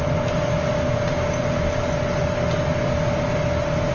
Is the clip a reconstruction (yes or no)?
no